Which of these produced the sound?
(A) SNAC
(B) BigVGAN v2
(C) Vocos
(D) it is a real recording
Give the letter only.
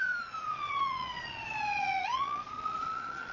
C